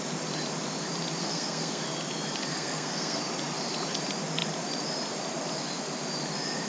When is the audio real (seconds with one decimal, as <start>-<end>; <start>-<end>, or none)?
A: 0.0-1.2; 1.8-2.5; 3.2-6.7

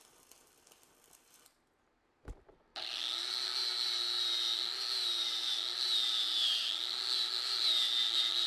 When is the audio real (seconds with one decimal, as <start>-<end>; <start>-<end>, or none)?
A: 0.0-8.5

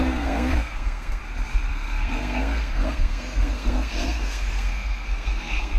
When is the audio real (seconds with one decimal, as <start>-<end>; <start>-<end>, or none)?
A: 1.2-1.7

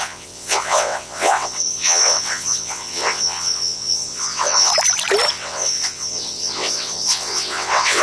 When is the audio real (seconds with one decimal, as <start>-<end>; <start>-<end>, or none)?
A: 4.7-5.3

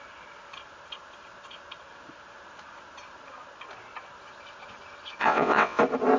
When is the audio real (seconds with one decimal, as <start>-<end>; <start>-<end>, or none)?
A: 0.0-5.2; 5.8-6.2

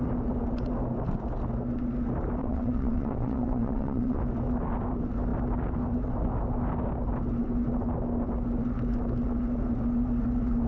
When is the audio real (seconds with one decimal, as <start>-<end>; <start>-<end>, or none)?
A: 0.0-2.4; 4.2-10.7